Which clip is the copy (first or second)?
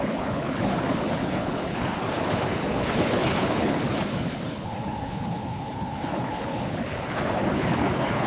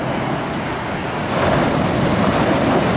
first